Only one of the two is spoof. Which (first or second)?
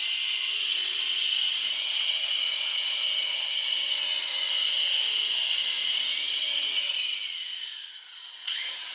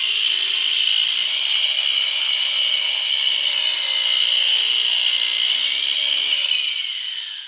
first